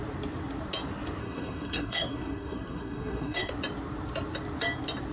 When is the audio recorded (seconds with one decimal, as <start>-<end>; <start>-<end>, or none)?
0.0-1.2; 3.5-5.1